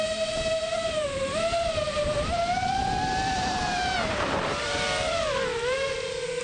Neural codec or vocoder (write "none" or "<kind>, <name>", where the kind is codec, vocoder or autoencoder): vocoder, BigVGAN v2